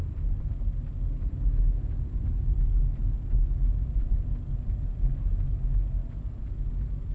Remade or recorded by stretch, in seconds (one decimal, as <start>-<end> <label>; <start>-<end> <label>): 0.0-7.1 recorded